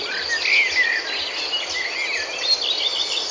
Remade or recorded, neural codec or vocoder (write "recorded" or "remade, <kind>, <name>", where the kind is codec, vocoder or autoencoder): recorded